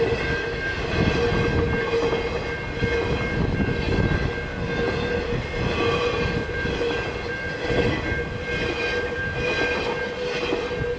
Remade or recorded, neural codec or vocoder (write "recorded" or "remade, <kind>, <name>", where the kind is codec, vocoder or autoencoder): recorded